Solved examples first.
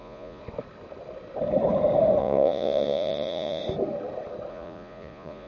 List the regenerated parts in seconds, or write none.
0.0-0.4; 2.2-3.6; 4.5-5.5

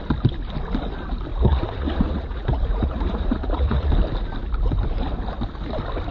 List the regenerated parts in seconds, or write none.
1.3-3.9